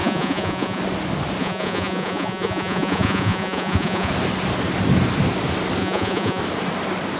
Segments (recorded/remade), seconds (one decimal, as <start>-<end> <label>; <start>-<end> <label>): 0.0-0.8 remade; 0.8-1.4 recorded; 1.4-4.1 remade; 4.1-5.8 recorded; 5.8-6.4 remade; 6.4-7.2 recorded